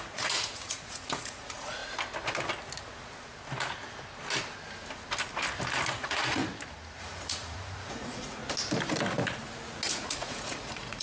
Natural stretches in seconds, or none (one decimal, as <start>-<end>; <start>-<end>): 1.8-5.9; 6.4-7.0; 8.4-9.9